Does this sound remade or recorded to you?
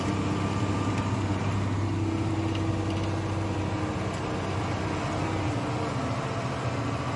recorded